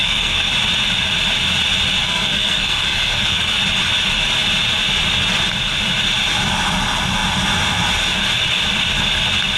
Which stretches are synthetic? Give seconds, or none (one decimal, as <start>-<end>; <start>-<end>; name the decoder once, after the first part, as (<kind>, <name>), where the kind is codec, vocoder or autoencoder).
0.0-0.5 (codec, SNAC); 2.0-3.6